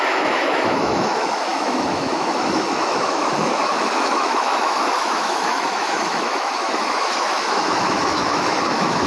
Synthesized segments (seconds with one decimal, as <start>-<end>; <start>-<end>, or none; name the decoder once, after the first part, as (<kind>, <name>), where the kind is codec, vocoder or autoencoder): 0.0-9.1 (autoencoder, DAC-VAE)